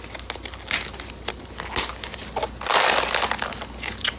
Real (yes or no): yes